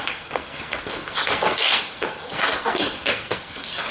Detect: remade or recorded remade